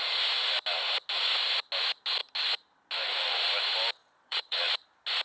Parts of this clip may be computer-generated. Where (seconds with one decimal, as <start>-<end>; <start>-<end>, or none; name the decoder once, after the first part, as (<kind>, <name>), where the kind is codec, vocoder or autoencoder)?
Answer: 4.0-4.7 (vocoder, Vocos)

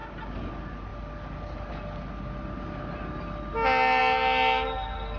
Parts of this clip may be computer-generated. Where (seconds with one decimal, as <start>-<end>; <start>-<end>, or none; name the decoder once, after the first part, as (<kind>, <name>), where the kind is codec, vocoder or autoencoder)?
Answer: none